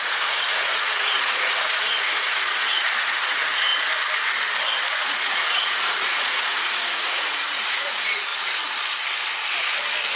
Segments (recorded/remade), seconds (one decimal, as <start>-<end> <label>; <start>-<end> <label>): 0.0-3.7 remade; 3.7-4.9 recorded; 4.9-8.3 remade; 8.3-10.2 recorded

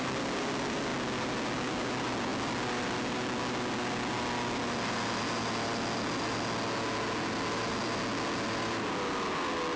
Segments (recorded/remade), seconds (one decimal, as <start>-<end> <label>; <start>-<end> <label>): 0.0-9.8 recorded